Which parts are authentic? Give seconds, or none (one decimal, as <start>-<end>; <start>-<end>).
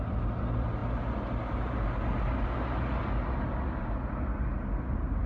0.0-5.3